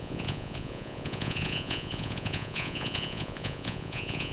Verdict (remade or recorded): remade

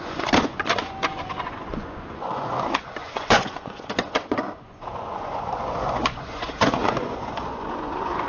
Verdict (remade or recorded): remade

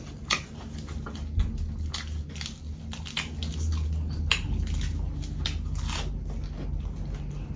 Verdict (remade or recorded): recorded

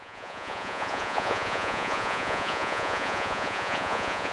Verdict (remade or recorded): remade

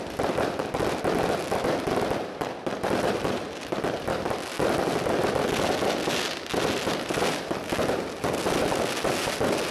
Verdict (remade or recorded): recorded